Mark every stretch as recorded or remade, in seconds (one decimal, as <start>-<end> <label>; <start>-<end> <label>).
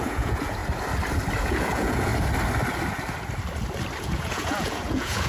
0.0-0.6 remade; 0.6-1.4 recorded; 1.4-2.1 remade; 2.1-4.0 recorded; 4.0-5.3 remade